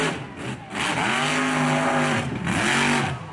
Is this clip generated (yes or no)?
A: no